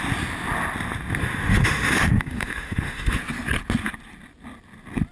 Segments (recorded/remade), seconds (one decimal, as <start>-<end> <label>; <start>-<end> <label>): 0.0-1.2 recorded; 1.2-3.2 remade; 3.2-5.1 recorded